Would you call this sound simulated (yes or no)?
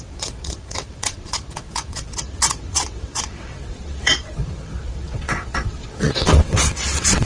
yes